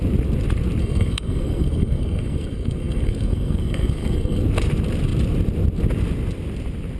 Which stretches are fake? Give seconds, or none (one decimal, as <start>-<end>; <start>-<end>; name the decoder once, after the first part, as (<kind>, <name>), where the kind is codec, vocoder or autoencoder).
0.8-4.4 (codec, SNAC)